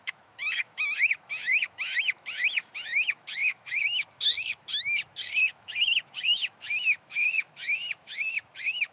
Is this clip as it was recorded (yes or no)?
no